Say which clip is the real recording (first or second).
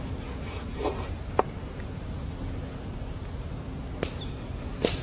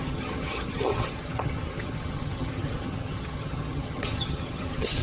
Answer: first